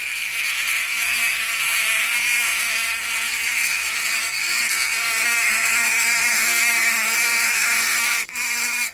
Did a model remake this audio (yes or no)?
yes